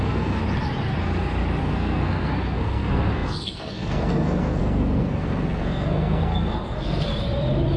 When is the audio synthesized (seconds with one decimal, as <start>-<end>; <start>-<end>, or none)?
0.0-0.4; 1.6-7.1